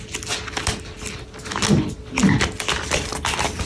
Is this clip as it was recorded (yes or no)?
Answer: yes